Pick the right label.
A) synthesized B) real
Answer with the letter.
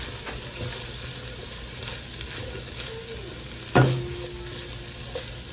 B